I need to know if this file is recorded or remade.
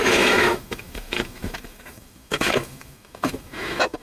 remade